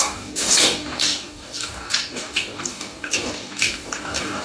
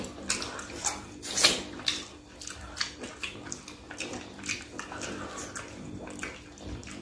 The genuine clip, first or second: second